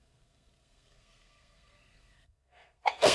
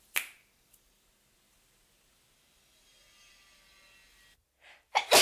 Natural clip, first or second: second